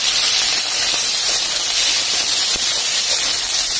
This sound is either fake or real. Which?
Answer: real